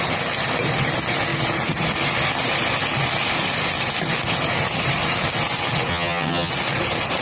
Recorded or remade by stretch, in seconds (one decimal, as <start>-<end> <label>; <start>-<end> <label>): 0.0-5.9 recorded; 5.9-6.5 remade; 6.5-7.2 recorded